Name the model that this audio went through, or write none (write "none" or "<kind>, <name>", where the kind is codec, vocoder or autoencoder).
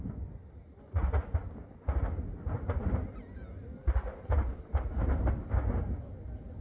none